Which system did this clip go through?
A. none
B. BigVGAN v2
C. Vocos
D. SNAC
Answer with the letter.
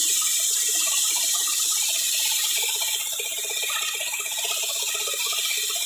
A